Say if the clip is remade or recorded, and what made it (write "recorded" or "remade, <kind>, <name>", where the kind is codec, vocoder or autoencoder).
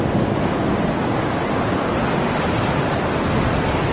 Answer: recorded